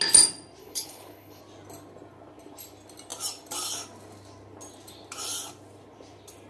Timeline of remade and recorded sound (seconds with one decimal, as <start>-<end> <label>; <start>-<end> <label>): 0.0-0.6 recorded; 0.6-1.4 remade; 1.4-6.5 recorded